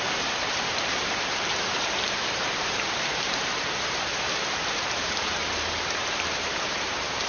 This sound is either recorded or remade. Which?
remade